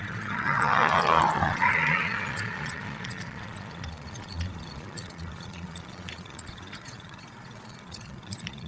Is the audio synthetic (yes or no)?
yes